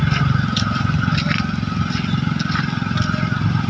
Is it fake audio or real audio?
real